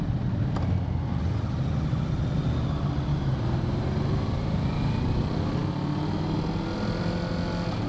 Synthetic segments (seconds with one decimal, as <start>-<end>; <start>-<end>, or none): 3.1-4.4